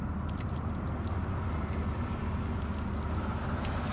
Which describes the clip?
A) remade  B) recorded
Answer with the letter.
B